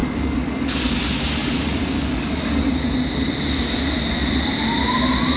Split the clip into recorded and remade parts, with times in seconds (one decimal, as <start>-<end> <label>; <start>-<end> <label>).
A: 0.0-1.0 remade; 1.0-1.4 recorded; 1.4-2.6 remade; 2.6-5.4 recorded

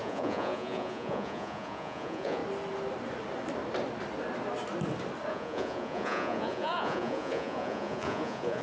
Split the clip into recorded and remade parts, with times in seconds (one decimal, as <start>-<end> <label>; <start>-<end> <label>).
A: 0.0-2.4 remade; 2.4-5.3 recorded; 5.3-8.6 remade

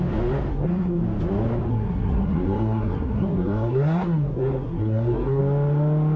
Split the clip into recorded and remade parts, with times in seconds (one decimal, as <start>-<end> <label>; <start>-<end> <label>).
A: 0.0-0.5 recorded; 0.5-1.0 remade; 1.0-1.7 recorded; 1.7-5.4 remade; 5.4-6.2 recorded